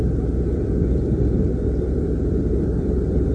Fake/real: fake